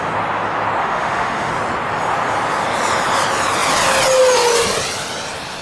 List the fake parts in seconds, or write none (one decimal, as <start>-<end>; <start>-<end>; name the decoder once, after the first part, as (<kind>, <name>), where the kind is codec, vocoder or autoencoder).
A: 0.8-1.5 (autoencoder, DAC-VAE)